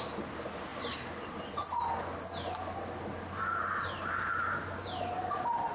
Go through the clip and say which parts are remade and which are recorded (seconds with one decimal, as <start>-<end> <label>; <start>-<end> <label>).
0.0-5.7 recorded